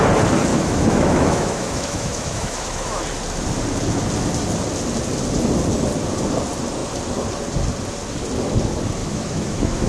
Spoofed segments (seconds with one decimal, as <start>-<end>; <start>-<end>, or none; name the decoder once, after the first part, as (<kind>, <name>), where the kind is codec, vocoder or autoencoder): 0.5-3.0 (autoencoder, DAC-VAE); 9.0-9.9